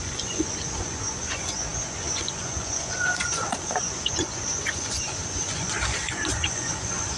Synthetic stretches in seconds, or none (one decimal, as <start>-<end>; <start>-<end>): 0.0-7.2